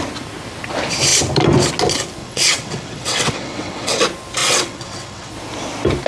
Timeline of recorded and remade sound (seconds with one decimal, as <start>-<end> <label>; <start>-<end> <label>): 0.0-2.2 recorded; 2.2-4.0 remade; 4.0-4.4 recorded; 4.4-5.3 remade; 5.3-6.1 recorded